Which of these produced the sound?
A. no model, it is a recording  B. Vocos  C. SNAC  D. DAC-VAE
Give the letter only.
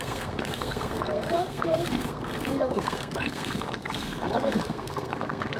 C